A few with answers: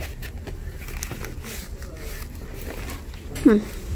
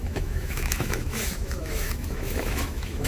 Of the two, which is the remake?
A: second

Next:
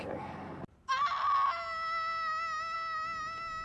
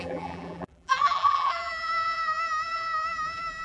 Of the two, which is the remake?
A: second